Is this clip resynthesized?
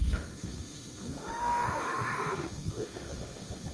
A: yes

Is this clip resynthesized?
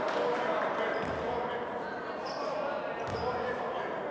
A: no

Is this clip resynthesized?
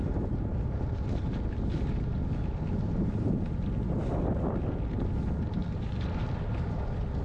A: no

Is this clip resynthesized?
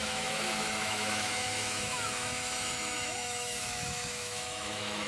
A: yes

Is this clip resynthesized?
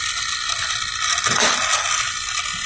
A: no